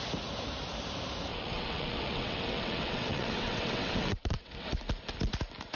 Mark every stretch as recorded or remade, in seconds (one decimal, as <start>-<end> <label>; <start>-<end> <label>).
0.0-1.3 recorded; 1.3-4.8 remade; 4.8-5.8 recorded